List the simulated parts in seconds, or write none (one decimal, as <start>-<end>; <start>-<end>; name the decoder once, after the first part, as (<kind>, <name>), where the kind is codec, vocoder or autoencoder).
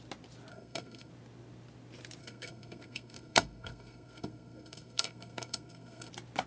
0.5-1.1 (codec, SNAC); 2.2-6.1